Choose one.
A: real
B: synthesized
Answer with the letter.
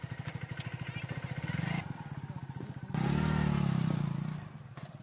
A